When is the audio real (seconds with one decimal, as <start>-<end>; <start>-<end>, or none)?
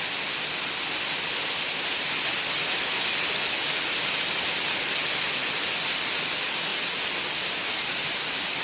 0.0-8.6